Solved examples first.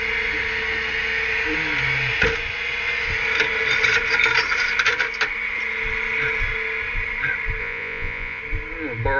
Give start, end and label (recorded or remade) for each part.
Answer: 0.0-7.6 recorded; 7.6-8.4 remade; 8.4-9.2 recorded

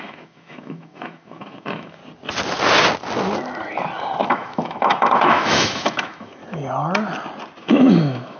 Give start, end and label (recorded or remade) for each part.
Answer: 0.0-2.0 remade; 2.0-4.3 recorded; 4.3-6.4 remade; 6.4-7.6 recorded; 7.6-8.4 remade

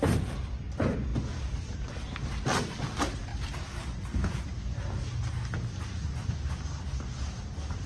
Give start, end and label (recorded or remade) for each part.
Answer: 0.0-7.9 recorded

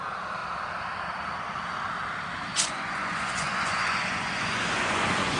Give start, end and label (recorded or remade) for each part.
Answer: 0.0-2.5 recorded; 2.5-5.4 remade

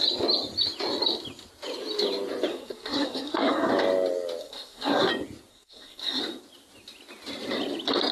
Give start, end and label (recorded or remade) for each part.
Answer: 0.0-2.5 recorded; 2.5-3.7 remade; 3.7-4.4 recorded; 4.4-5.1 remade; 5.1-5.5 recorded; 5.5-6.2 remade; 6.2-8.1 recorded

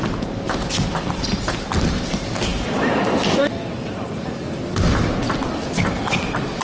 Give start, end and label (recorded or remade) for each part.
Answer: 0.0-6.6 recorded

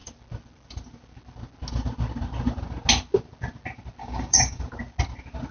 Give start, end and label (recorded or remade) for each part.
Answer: 0.0-4.0 recorded; 4.0-4.6 remade; 4.6-5.5 recorded

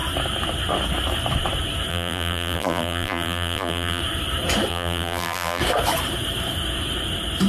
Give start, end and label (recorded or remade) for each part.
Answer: 0.0-1.9 recorded; 1.9-4.0 remade; 4.0-4.7 recorded; 4.7-5.6 remade; 5.6-7.5 recorded